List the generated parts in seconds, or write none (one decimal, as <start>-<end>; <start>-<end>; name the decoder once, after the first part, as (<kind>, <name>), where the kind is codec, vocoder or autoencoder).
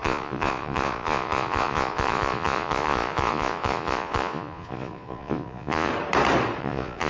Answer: 0.0-5.9 (vocoder, Vocos); 6.6-7.1